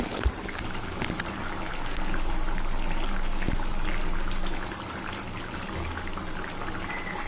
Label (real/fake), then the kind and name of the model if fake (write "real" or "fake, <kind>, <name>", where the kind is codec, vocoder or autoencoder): real